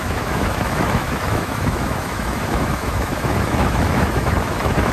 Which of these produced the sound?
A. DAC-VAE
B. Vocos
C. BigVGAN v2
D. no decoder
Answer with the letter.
A